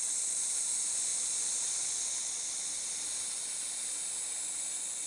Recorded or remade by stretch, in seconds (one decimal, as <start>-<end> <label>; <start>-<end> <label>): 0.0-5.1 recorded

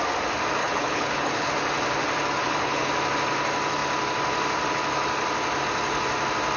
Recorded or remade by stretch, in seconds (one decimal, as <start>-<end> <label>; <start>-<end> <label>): 0.0-0.6 recorded; 0.6-1.5 remade; 1.5-2.4 recorded; 2.4-2.9 remade; 2.9-6.6 recorded

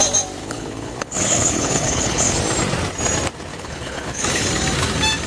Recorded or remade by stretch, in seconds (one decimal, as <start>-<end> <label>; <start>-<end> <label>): 0.0-0.4 recorded; 0.4-2.4 remade; 2.4-3.5 recorded; 3.5-4.5 remade; 4.5-5.3 recorded